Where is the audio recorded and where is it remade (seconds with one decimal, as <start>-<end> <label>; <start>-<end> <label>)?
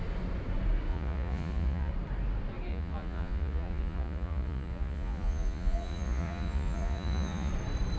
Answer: 0.0-0.9 recorded; 0.9-1.9 remade; 1.9-2.7 recorded; 2.7-7.5 remade; 7.5-8.0 recorded